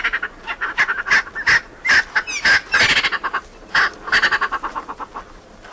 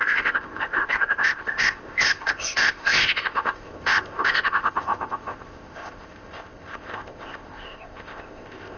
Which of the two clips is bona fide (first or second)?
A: first